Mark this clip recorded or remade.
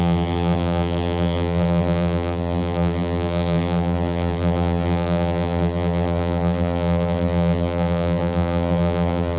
remade